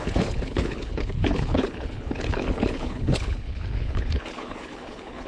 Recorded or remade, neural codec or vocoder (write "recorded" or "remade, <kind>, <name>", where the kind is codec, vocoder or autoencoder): remade, codec, HILCodec